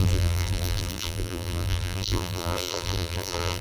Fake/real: fake